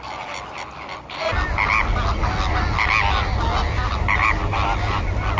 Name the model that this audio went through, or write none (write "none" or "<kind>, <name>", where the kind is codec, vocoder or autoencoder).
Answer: none